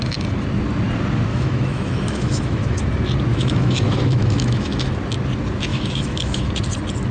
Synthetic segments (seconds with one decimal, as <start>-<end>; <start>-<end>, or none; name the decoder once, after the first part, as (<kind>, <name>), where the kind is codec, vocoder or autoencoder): 1.3-2.8 (autoencoder, DAC-VAE); 3.3-4.9; 5.7-6.5

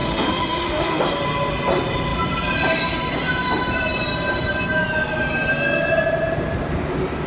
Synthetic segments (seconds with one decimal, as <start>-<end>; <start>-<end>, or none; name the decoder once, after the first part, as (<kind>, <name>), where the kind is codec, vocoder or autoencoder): 0.0-1.0 (autoencoder, DAC-VAE)

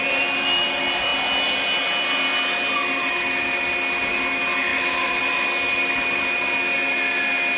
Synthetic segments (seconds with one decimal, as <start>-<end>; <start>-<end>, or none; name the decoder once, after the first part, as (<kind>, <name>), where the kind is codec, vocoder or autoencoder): 4.7-5.2 (autoencoder, DAC-VAE)

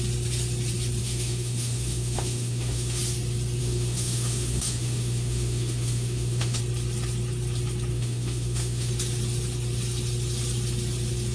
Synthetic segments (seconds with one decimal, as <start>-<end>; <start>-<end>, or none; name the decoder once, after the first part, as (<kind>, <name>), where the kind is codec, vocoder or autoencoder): 1.0-3.0 (autoencoder, DAC-VAE); 3.6-6.6; 7.9-8.9

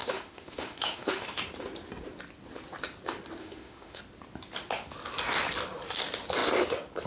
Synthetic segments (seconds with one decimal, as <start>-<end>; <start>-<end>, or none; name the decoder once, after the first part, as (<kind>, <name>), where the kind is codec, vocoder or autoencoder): 0.0-1.4 (autoencoder, DAC-VAE); 3.4-4.0

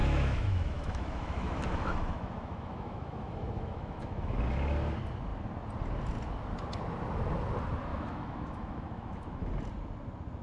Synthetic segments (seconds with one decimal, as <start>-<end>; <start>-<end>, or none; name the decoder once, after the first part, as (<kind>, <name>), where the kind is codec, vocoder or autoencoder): 0.0-4.4 (autoencoder, DAC-VAE); 7.9-9.5